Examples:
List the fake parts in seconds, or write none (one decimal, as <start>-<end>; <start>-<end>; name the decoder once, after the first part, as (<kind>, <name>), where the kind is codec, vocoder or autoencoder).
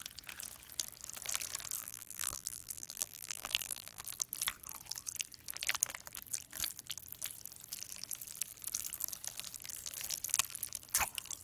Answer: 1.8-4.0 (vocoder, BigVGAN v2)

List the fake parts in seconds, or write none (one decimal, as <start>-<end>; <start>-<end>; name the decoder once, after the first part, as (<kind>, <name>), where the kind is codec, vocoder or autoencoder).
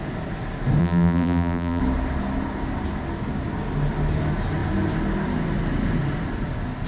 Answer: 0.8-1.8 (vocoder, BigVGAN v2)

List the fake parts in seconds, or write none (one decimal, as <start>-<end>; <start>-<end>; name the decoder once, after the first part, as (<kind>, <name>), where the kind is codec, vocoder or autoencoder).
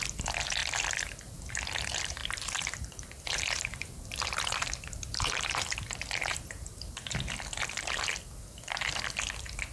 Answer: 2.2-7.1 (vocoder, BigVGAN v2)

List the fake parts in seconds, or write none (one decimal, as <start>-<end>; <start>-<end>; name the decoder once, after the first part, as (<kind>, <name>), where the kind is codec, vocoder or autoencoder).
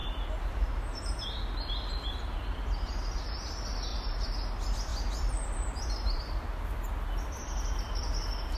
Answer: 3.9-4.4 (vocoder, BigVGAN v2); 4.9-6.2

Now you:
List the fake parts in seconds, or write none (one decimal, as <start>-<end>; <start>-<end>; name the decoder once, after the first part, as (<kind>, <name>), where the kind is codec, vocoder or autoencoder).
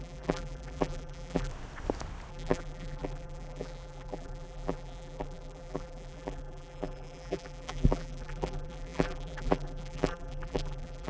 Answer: 0.0-1.5 (vocoder, BigVGAN v2); 2.3-11.1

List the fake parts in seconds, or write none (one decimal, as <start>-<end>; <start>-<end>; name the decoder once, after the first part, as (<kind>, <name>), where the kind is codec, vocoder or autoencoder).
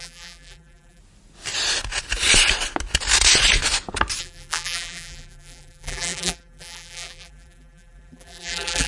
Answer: 0.0-1.0 (vocoder, BigVGAN v2); 4.2-8.9